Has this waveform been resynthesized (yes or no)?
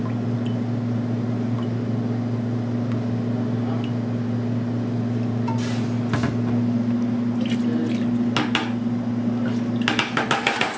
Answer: no